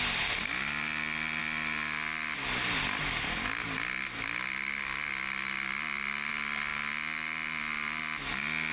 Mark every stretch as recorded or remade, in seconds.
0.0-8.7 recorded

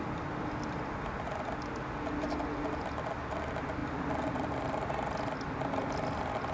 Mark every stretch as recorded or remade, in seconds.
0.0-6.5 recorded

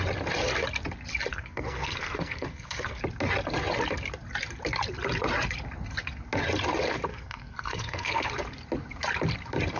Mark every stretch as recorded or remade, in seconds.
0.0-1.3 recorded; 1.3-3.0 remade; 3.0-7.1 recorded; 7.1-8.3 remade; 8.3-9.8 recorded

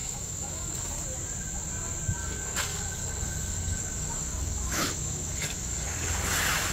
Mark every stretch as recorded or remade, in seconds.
0.0-0.8 remade; 0.8-2.2 recorded; 2.2-6.2 remade; 6.2-6.7 recorded

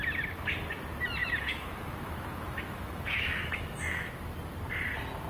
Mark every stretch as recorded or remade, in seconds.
0.0-1.2 recorded; 1.2-4.1 remade; 4.1-5.3 recorded

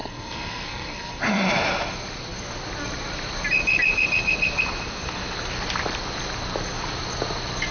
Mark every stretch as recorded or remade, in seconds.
0.0-1.2 remade; 1.2-7.7 recorded

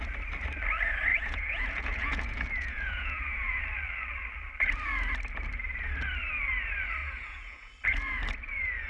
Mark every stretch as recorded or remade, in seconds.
0.0-1.1 recorded; 1.1-3.6 remade; 3.6-7.0 recorded; 7.0-7.7 remade; 7.7-8.9 recorded

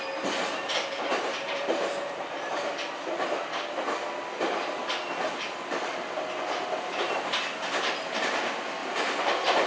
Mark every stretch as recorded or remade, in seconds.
0.0-1.1 recorded; 1.1-2.5 remade; 2.5-8.8 recorded; 8.8-9.7 remade